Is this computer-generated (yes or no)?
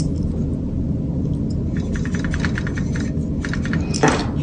no